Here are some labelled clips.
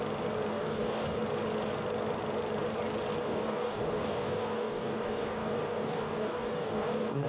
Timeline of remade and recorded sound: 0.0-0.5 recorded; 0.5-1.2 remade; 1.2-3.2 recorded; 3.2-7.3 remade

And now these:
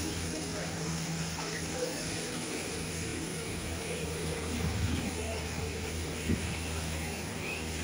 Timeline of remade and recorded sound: 0.0-7.8 remade